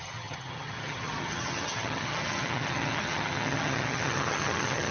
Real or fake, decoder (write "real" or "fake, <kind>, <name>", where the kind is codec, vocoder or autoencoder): fake, vocoder, HiFi-GAN